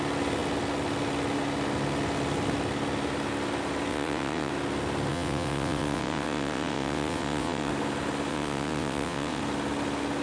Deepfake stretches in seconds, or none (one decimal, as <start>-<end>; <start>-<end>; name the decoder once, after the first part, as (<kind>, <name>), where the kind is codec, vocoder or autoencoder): 3.9-4.5 (vocoder, WaveNeXt); 5.1-7.7; 8.3-9.4